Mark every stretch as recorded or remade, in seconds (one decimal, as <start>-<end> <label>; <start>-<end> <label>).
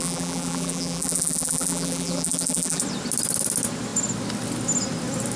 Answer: 0.0-2.8 remade; 2.8-5.4 recorded